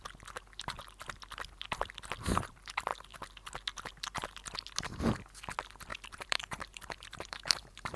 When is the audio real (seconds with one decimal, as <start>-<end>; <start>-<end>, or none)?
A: 0.0-5.9